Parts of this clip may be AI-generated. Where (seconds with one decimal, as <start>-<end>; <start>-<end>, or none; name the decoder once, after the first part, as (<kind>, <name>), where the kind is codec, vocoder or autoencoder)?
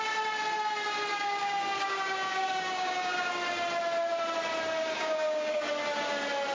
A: 1.1-3.3 (codec, DAC); 4.8-5.7